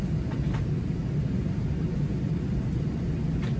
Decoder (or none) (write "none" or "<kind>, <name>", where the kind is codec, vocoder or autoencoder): none